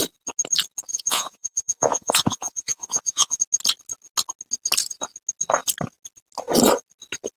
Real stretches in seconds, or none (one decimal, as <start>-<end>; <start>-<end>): 0.0-0.9; 3.4-7.4